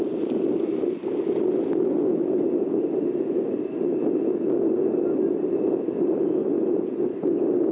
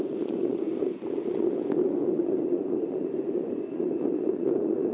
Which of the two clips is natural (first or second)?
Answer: first